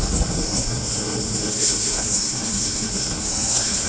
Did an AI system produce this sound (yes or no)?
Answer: yes